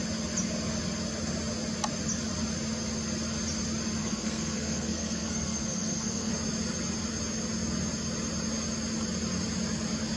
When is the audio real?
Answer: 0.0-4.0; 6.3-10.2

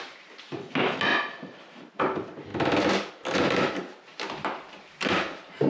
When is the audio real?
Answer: 0.0-4.1; 4.8-5.7

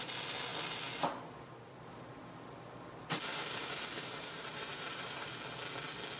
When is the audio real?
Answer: 0.0-3.3; 5.3-6.2

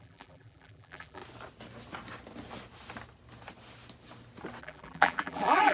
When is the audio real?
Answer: 1.2-4.6

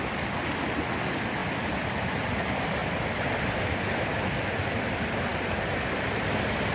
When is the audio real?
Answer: 0.0-6.7

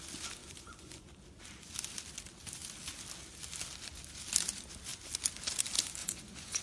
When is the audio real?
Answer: 0.0-0.4; 1.1-6.0

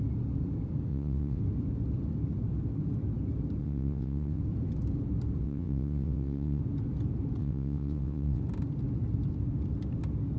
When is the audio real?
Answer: 0.0-0.9; 1.4-3.6; 4.4-5.4; 6.6-7.4; 8.4-10.4